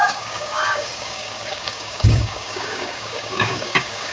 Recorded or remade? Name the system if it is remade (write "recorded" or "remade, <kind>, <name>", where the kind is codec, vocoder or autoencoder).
remade, codec, DAC